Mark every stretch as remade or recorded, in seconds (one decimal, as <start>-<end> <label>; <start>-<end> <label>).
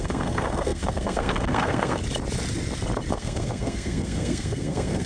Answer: 0.0-2.0 remade; 2.0-3.1 recorded; 3.1-5.1 remade